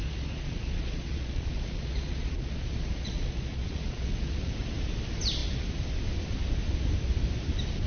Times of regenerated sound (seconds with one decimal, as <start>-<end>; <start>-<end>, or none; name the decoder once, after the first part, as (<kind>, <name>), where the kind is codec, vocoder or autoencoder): 0.0-4.5 (vocoder, Vocos)

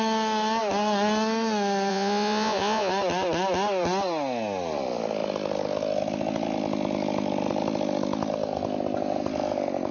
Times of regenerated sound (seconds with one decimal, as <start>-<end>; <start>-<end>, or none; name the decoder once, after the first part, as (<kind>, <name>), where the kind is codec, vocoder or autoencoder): 1.9-2.9 (vocoder, Vocos)

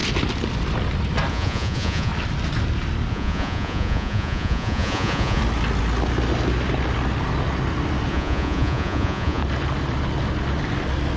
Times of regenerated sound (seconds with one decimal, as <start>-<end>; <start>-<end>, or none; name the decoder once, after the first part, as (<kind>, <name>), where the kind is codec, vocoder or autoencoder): 1.3-2.1 (vocoder, Vocos); 3.1-5.4; 8.1-9.4

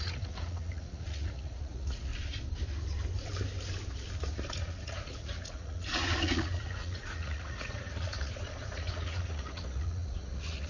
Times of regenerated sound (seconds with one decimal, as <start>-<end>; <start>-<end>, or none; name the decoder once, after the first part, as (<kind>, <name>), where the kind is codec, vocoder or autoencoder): 0.0-2.1 (vocoder, Vocos); 4.5-10.7

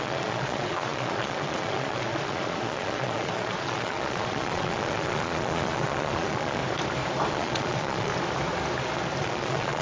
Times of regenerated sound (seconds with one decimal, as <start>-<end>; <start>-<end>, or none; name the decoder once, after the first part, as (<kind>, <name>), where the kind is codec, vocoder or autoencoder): 0.0-6.6 (vocoder, Vocos); 7.3-8.1; 9.2-9.8

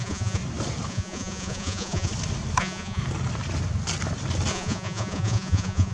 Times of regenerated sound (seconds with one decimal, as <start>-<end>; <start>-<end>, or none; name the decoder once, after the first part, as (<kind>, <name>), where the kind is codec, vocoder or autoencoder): 0.0-0.4 (vocoder, Vocos); 0.9-2.1; 2.6-3.0; 4.5-5.9